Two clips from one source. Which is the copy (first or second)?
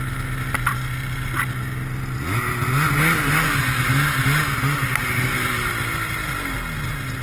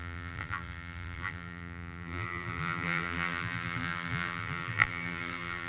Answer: second